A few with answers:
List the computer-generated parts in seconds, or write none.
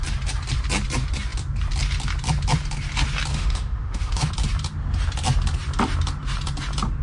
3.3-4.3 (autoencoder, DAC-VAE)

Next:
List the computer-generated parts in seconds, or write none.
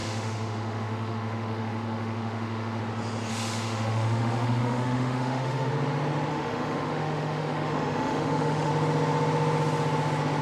0.0-2.8 (autoencoder, DAC-VAE); 3.3-5.7; 6.3-8.7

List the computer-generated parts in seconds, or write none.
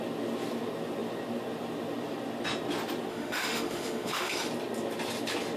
3.1-4.5 (autoencoder, DAC-VAE)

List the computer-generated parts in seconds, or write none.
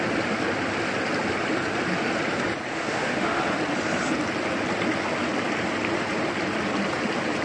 2.7-3.4 (autoencoder, DAC-VAE)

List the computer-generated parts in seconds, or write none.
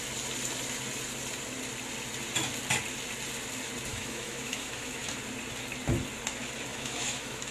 3.9-5.2 (autoencoder, DAC-VAE); 6.7-7.5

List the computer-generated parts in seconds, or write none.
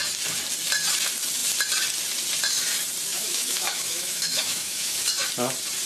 3.1-5.1 (autoencoder, DAC-VAE)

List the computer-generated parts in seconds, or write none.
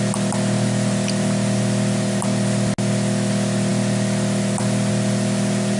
none